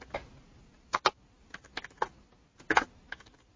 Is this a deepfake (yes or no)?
no